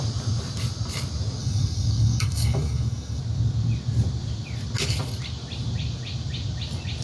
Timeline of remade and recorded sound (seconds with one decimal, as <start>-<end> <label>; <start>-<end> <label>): 0.0-1.4 recorded; 1.4-3.2 remade; 3.2-7.0 recorded